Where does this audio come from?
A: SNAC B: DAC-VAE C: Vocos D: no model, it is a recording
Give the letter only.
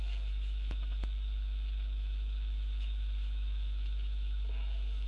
B